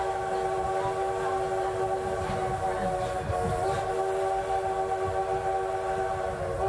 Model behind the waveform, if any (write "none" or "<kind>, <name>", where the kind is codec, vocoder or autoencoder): none